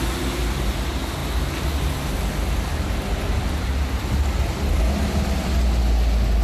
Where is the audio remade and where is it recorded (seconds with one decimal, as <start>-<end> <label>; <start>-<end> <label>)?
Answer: 0.0-6.4 recorded